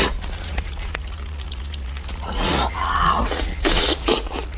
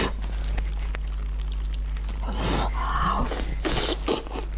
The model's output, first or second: first